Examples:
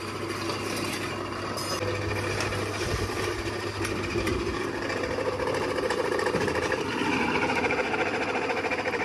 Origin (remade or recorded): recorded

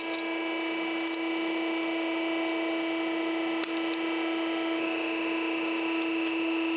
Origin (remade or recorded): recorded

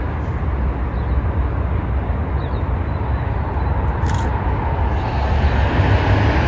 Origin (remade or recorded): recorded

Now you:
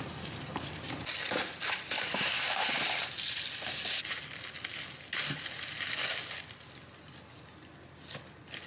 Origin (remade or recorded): recorded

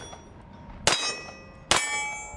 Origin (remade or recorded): recorded